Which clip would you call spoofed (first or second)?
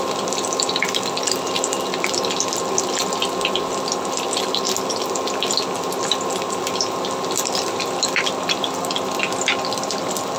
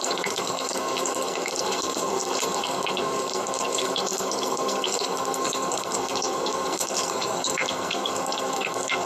second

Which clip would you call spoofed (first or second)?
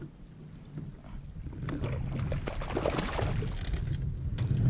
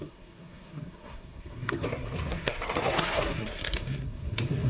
second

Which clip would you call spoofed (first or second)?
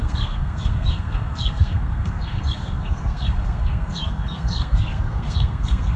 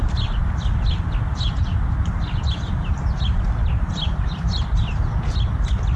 first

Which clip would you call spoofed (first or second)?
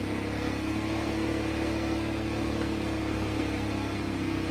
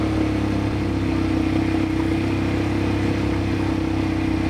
first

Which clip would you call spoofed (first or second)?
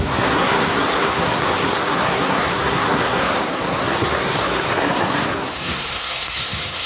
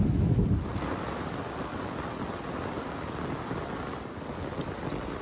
first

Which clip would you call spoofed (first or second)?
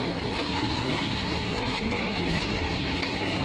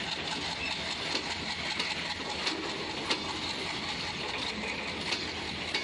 first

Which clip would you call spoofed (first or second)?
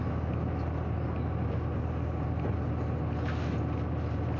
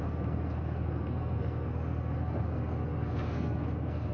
second